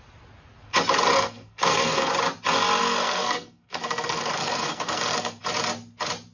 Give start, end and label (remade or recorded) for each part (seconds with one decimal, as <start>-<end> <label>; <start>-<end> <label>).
0.0-1.1 recorded; 1.1-2.1 remade; 2.1-2.8 recorded; 2.8-5.4 remade; 5.4-6.3 recorded